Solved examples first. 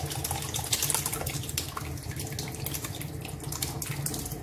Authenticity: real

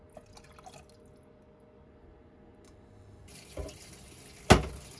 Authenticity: real